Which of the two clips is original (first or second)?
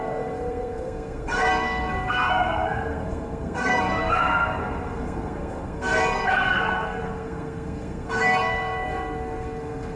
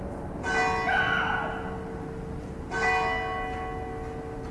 second